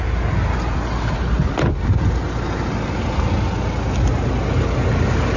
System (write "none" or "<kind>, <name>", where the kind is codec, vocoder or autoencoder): none